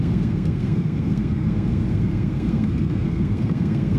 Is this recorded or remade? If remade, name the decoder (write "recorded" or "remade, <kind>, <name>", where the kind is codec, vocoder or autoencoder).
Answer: remade, codec, SNAC